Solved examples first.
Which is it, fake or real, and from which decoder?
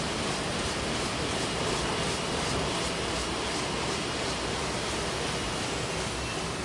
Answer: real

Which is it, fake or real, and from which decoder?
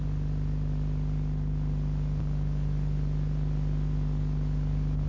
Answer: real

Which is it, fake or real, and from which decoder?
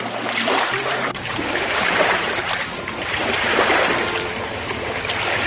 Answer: fake, vocoder, BigVGAN v2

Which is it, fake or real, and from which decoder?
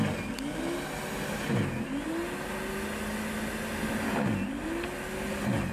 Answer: real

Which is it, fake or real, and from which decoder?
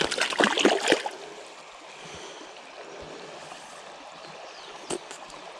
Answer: real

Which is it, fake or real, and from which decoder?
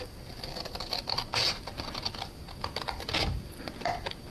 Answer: real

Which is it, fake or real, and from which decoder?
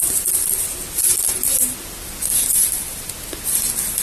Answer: real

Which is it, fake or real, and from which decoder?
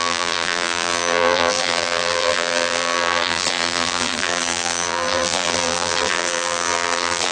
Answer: fake, vocoder, BigVGAN v2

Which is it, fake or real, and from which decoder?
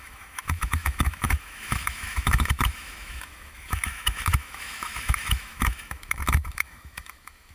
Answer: fake, autoencoder, DAC-VAE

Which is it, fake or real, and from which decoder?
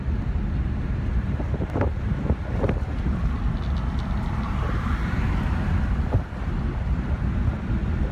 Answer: real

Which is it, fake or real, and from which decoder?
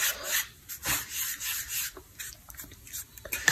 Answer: real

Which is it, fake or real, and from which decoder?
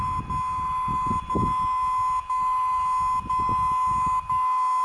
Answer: real